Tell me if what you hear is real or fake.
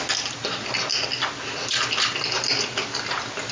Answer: real